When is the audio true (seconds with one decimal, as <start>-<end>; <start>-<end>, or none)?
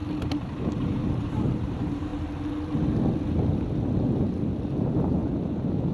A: 0.0-1.2; 2.1-4.8; 5.2-5.9